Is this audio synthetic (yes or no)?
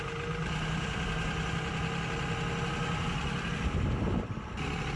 no